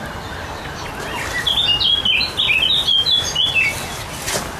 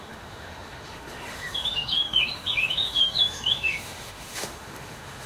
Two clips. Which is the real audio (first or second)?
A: first